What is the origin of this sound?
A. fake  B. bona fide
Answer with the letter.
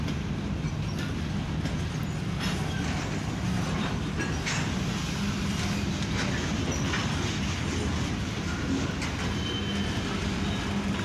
B